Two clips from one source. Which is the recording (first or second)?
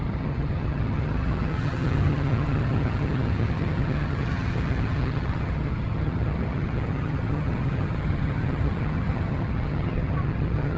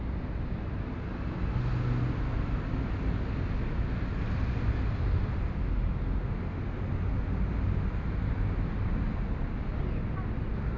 second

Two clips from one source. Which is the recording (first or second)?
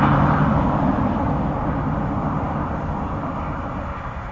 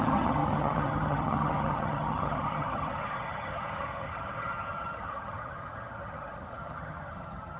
first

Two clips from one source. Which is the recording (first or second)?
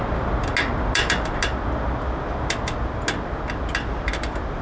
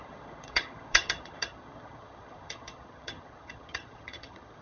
first